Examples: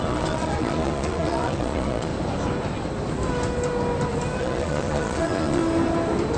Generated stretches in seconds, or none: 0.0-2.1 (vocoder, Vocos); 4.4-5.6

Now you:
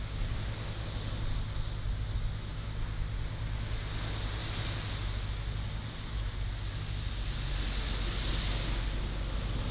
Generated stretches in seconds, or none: none

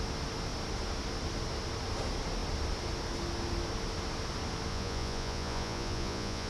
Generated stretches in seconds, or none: 4.7-6.5 (vocoder, Vocos)

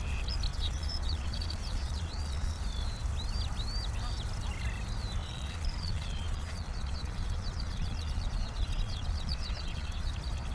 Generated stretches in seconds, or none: 0.5-2.6 (vocoder, Vocos); 5.2-10.1

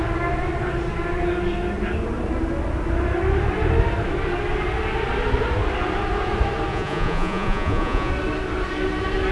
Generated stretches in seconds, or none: 6.7-8.1 (vocoder, Vocos)

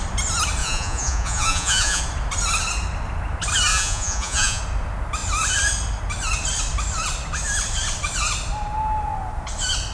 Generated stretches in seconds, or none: 0.6-2.0 (vocoder, Vocos); 3.7-4.6